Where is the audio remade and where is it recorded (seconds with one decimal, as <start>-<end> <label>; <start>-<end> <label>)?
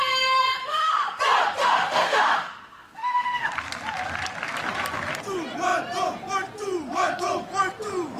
0.0-0.6 recorded; 0.6-1.2 remade; 1.2-1.6 recorded; 1.6-3.5 remade; 3.5-8.2 recorded